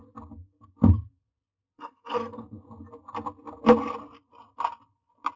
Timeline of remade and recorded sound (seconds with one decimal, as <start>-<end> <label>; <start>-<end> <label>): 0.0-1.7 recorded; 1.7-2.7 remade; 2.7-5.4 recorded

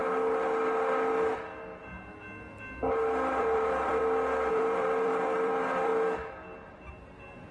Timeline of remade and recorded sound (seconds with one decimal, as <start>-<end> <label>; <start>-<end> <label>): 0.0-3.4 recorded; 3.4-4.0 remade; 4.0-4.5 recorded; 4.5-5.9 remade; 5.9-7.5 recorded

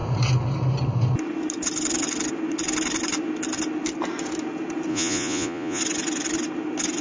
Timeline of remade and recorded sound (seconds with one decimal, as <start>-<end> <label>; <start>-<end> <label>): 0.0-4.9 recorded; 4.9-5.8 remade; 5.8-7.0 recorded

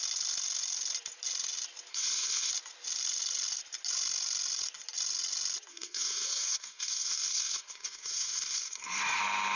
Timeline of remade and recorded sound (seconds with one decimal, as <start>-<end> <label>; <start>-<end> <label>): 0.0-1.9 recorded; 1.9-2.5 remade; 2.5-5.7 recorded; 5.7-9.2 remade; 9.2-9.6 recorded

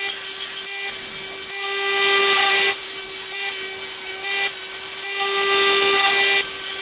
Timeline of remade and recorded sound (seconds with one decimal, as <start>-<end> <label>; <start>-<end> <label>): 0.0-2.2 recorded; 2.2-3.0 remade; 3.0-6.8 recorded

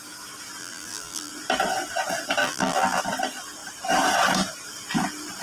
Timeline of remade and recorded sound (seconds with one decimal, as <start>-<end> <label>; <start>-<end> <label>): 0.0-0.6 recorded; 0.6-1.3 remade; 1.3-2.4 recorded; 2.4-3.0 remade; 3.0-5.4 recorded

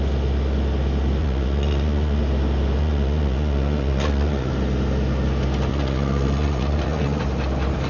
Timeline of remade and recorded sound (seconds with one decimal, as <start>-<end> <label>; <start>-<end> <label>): 0.0-1.2 recorded; 1.2-2.2 remade; 2.2-2.8 recorded; 2.8-4.5 remade; 4.5-5.7 recorded; 5.7-7.2 remade; 7.2-7.9 recorded